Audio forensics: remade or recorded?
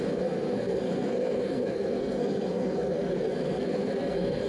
remade